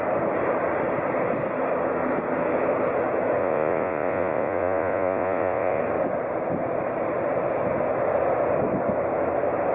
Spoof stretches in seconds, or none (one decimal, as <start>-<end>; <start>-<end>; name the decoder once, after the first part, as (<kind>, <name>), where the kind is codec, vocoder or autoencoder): 3.4-5.8 (vocoder, Vocos)